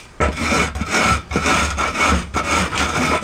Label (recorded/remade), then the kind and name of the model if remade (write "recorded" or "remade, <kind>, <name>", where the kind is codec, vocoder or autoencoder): recorded